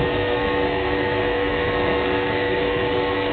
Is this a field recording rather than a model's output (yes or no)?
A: no